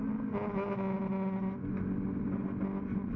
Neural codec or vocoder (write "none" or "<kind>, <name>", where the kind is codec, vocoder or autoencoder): none